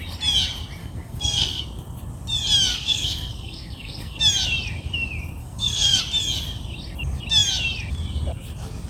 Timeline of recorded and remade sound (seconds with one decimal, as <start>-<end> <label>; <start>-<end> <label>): 0.0-0.8 recorded; 0.8-1.6 remade; 1.6-2.7 recorded; 2.7-4.2 remade; 4.2-5.4 recorded; 5.4-6.0 remade; 6.0-8.9 recorded